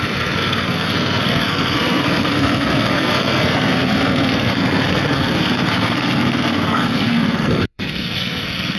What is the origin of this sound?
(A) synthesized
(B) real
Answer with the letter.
A